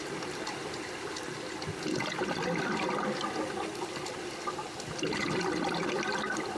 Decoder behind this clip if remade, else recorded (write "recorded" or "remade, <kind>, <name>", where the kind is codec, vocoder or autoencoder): recorded